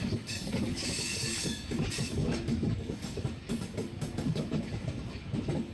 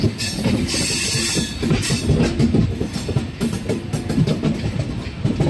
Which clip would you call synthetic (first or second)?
first